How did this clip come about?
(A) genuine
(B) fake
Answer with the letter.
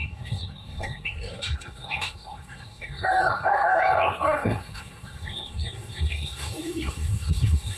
B